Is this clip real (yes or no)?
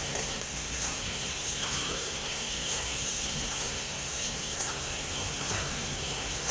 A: no